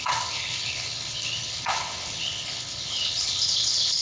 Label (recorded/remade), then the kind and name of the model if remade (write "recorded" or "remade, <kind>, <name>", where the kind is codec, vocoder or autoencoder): remade, codec, HILCodec